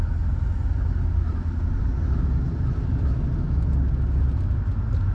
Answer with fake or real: real